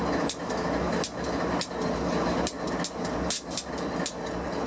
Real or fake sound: real